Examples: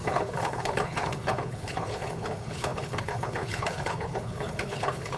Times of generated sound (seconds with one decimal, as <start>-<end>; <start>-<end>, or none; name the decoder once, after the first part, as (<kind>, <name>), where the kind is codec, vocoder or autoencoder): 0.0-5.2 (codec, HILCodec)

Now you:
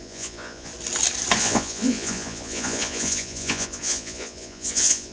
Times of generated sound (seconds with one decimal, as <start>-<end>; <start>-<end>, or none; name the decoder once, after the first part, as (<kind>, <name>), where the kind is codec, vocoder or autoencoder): 0.0-0.7 (vocoder, Vocos); 1.4-5.1

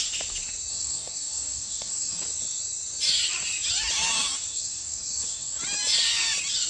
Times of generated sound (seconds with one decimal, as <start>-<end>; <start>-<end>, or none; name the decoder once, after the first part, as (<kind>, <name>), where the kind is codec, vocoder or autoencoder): 0.7-2.2 (codec, DAC); 4.5-5.6

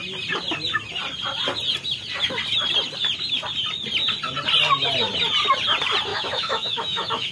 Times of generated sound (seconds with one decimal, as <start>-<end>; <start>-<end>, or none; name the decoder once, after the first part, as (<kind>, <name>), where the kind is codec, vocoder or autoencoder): 6.1-7.3 (autoencoder, DAC-VAE)

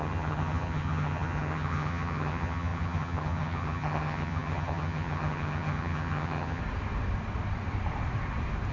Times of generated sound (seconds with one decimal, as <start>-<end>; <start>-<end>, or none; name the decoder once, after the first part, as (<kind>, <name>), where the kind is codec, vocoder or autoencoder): 0.0-6.6 (vocoder, HiFi-GAN)